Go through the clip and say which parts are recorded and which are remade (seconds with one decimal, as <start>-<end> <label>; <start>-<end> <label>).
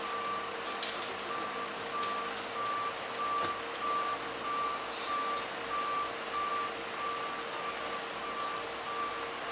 0.0-9.5 recorded